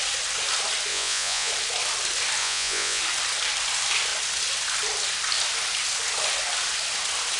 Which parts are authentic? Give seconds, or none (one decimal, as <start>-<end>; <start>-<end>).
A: 0.0-0.9; 1.5-2.4; 3.0-7.4